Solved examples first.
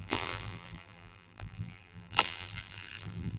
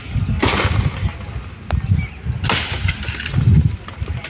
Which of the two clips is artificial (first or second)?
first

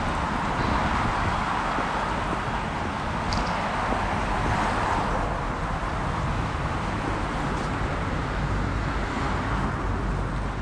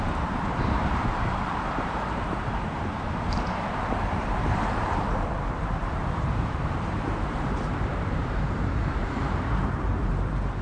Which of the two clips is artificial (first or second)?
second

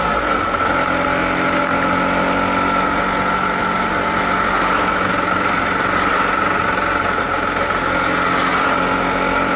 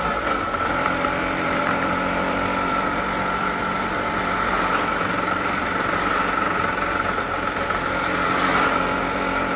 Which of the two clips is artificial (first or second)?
second